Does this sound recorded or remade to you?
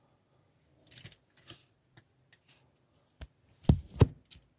recorded